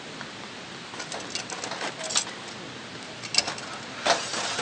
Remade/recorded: recorded